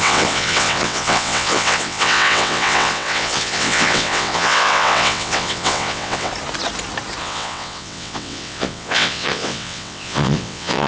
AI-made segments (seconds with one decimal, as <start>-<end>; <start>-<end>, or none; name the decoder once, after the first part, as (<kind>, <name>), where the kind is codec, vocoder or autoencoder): 0.0-6.3 (vocoder, WaveNeXt); 7.2-10.9